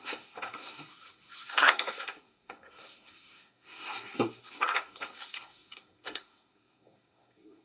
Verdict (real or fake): fake